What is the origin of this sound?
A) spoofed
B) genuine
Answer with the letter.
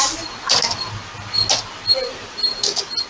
B